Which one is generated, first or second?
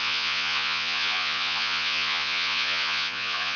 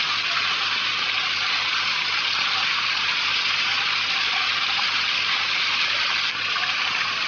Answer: first